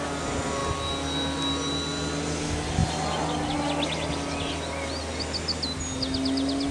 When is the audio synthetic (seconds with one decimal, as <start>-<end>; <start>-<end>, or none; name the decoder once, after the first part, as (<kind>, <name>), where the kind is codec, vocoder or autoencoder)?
none